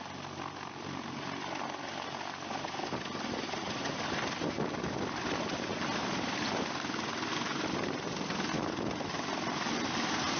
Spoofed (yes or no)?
no